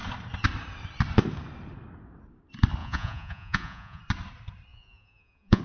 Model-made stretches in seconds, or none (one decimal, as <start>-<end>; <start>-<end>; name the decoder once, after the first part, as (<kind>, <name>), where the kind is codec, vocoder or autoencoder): 2.8-4.0 (vocoder, Vocos); 4.7-5.6